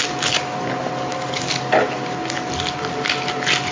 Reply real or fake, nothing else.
real